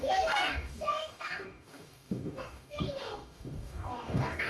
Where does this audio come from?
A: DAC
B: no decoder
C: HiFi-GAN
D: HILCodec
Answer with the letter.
A